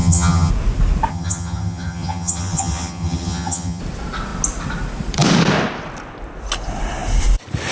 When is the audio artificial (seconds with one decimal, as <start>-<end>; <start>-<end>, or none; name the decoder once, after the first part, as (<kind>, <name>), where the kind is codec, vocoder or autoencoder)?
0.0-0.5 (vocoder, HiFi-GAN); 1.1-3.8